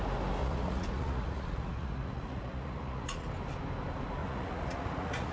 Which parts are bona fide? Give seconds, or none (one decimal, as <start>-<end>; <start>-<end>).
0.0-0.4; 3.3-4.2